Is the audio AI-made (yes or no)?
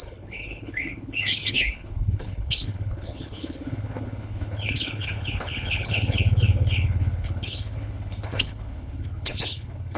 yes